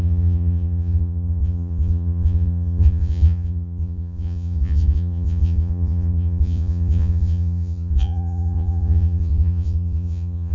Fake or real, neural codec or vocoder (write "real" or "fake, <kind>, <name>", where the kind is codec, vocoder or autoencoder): fake, vocoder, Vocos